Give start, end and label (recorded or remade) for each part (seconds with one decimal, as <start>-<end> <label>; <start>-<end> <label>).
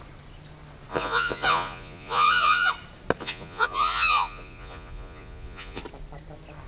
0.0-0.9 recorded; 0.9-2.7 remade; 2.7-3.2 recorded; 3.2-5.8 remade; 5.8-6.7 recorded